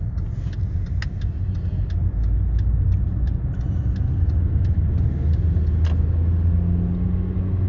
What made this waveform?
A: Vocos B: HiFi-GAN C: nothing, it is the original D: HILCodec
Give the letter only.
C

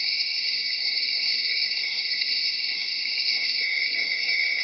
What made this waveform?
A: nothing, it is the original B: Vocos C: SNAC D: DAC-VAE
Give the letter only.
C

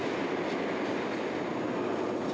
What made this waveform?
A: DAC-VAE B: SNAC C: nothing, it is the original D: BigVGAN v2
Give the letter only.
C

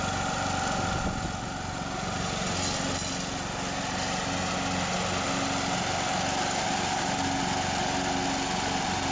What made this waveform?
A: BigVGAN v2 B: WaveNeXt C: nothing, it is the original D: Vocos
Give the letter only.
C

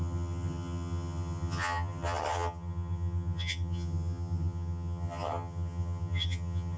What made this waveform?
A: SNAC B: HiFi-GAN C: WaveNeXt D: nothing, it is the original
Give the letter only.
B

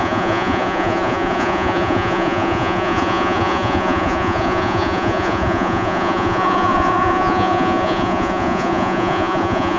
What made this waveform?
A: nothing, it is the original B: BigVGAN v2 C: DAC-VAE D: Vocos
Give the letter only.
D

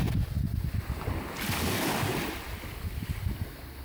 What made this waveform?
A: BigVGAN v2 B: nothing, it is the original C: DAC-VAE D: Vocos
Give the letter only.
B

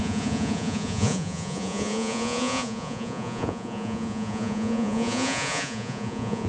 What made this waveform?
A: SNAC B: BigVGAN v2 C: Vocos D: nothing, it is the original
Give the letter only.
C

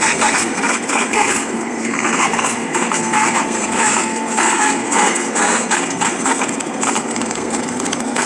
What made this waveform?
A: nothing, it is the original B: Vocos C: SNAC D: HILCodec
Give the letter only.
C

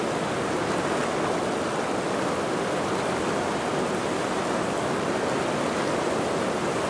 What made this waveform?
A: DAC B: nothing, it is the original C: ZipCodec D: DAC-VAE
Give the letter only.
B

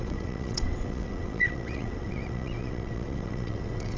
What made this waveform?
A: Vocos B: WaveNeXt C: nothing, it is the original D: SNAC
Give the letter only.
B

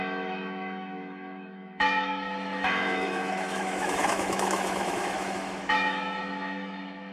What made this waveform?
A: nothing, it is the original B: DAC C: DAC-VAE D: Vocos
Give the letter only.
C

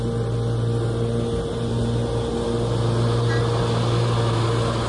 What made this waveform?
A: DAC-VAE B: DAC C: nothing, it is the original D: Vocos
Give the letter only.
C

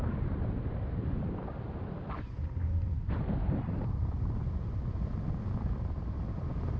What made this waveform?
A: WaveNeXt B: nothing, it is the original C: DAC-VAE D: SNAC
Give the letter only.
B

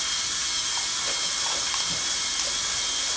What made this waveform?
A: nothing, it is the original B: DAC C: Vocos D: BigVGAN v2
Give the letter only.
A